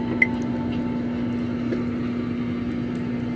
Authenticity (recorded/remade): recorded